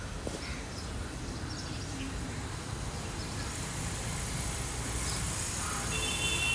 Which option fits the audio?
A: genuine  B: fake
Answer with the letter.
A